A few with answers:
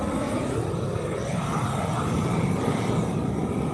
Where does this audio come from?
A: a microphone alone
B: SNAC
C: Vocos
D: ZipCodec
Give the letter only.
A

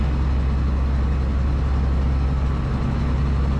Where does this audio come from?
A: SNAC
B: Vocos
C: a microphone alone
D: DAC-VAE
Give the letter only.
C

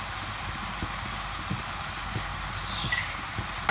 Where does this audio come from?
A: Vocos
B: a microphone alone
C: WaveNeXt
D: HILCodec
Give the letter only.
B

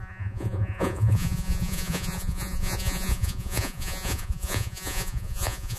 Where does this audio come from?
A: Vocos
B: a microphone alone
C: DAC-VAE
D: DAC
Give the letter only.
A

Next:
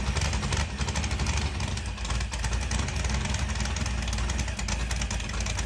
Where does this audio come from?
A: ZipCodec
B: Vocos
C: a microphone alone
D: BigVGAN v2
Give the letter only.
C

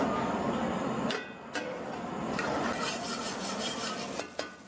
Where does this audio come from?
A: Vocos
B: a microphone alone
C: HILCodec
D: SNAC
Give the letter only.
B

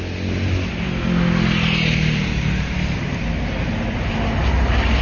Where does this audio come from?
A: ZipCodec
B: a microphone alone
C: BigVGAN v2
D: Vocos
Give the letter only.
B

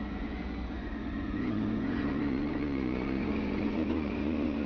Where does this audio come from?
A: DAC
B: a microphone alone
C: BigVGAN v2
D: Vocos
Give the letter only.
D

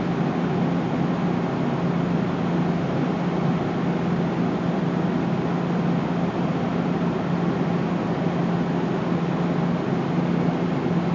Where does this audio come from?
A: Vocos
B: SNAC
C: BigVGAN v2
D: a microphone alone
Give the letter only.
D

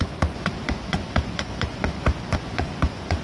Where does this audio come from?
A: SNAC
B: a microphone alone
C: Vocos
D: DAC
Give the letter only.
C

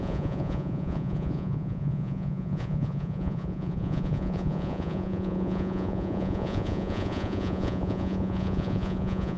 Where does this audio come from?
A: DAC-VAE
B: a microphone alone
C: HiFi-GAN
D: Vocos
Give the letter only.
D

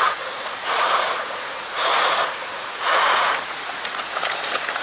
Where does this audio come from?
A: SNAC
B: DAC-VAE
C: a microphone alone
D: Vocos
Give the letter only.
D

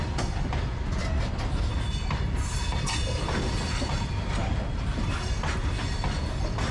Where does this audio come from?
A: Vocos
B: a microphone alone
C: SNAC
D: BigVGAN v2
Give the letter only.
B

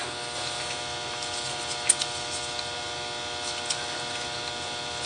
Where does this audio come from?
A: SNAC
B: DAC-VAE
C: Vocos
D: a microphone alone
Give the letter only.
D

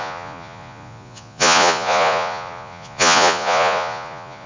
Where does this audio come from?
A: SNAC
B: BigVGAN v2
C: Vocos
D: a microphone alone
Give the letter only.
C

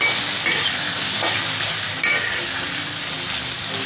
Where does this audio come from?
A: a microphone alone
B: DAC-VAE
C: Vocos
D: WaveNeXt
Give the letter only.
A